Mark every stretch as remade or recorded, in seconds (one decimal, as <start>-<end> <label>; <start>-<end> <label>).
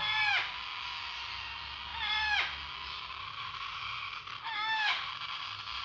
0.0-3.2 recorded; 3.2-5.1 remade; 5.1-5.8 recorded